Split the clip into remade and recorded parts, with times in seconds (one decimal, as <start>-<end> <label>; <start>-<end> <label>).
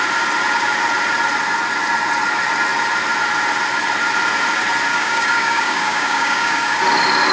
0.0-4.9 recorded; 4.9-6.8 remade; 6.8-7.3 recorded